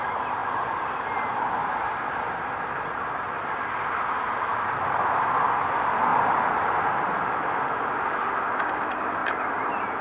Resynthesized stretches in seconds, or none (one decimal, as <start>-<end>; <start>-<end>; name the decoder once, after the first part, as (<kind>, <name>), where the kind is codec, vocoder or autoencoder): 6.1-6.8 (vocoder, BigVGAN v2); 9.2-10.0